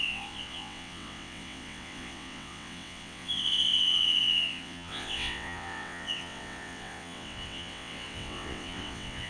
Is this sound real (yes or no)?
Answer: no